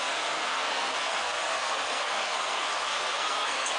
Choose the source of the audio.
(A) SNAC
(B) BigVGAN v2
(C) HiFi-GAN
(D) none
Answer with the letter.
A